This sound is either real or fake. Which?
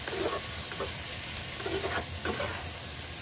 real